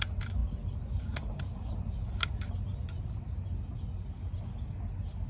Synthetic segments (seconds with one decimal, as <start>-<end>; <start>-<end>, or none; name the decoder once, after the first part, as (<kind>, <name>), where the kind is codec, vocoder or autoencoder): none